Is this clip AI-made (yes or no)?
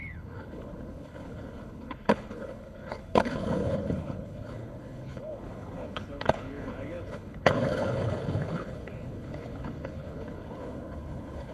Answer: yes